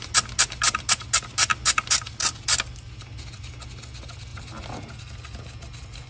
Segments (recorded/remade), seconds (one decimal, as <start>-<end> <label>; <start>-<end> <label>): 0.0-6.1 recorded